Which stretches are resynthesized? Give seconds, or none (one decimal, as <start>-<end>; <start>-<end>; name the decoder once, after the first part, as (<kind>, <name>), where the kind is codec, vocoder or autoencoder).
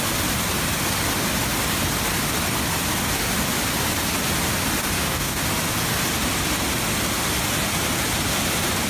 4.8-5.4 (codec, DAC)